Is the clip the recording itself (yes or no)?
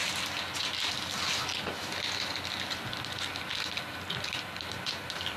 yes